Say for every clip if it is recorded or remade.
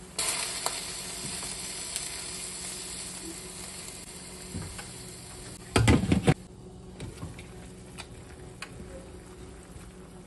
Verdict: recorded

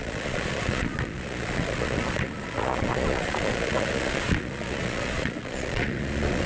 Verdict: remade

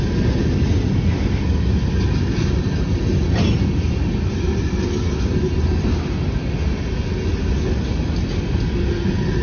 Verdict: recorded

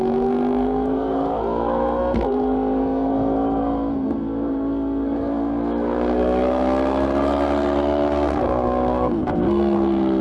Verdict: remade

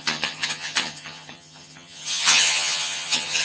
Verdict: remade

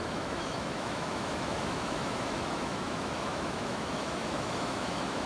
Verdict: remade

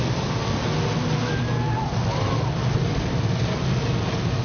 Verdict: recorded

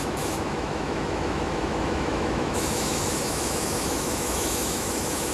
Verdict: remade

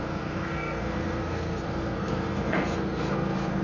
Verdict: remade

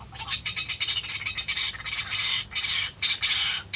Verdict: recorded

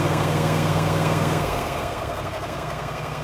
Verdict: remade